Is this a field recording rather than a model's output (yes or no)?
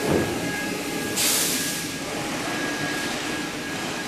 no